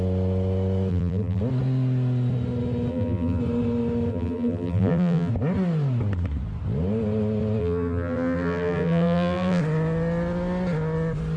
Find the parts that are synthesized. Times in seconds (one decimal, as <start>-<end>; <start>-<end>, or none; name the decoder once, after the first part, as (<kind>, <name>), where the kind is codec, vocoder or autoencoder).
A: 0.9-1.4 (vocoder, BigVGAN v2); 2.9-3.4; 4.1-5.3; 7.6-9.6